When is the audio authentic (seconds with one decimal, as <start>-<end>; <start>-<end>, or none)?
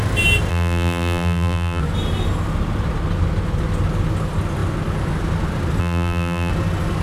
0.0-0.5; 1.8-5.8; 6.5-7.0